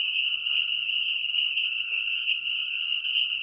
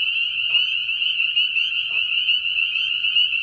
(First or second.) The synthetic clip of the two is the first